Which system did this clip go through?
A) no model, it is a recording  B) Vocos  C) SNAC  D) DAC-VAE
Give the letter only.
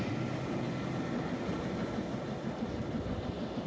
A